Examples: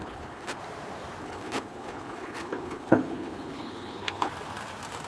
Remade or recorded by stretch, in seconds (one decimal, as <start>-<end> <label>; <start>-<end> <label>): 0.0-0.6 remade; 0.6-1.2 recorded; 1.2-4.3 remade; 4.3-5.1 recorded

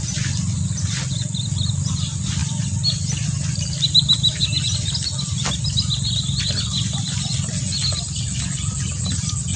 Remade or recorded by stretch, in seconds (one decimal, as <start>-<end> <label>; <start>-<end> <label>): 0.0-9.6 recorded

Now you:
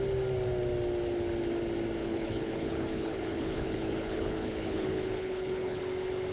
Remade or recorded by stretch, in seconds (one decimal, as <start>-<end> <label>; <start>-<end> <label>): 0.0-2.0 recorded; 2.0-5.8 remade; 5.8-6.3 recorded